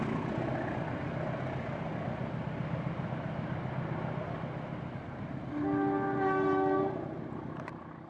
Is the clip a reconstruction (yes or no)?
no